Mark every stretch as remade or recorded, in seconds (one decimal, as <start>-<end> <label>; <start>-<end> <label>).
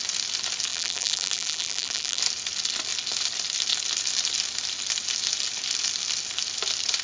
0.0-0.7 recorded; 0.7-2.2 remade; 2.2-7.0 recorded